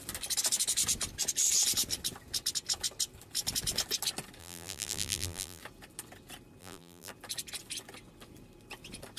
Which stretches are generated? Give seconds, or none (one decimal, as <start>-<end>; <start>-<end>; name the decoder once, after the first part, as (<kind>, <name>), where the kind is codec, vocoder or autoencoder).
4.4-5.6 (vocoder, BigVGAN v2); 6.6-7.1